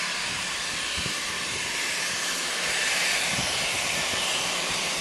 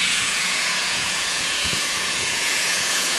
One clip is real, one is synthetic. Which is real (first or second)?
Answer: first